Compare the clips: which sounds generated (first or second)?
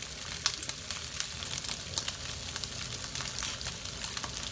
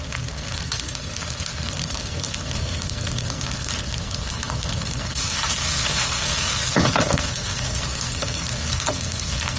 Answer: second